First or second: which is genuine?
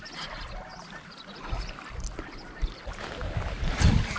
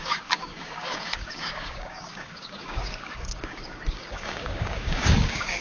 first